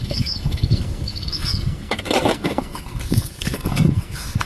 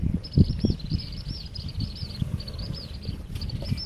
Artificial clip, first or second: first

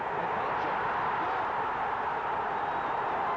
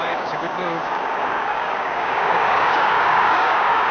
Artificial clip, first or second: second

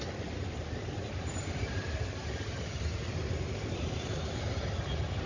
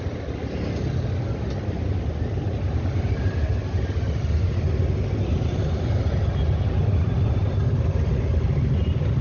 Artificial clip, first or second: first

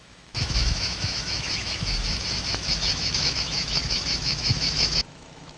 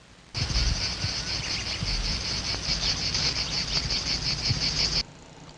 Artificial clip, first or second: first